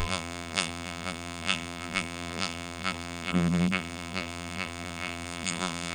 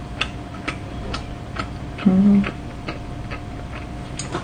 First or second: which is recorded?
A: second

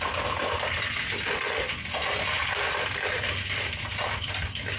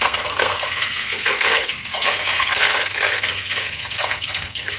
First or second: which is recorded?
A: first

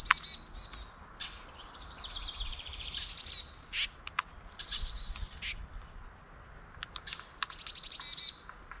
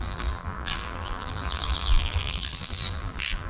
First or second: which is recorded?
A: first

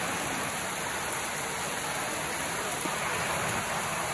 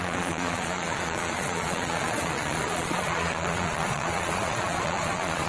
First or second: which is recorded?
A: first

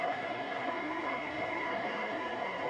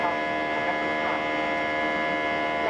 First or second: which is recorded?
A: second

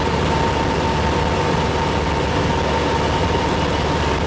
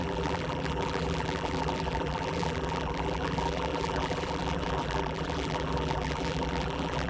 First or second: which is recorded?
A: first